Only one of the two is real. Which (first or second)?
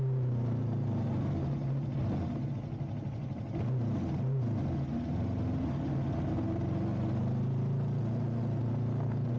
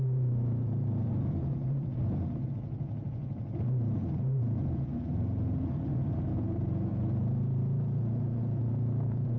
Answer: first